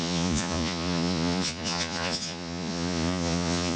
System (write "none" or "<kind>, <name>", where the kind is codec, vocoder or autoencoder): vocoder, Vocos